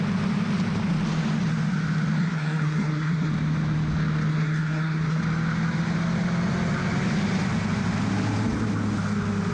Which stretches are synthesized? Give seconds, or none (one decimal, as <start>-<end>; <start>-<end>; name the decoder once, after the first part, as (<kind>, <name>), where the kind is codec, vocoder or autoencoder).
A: 2.2-3.3 (codec, SNAC); 4.3-5.2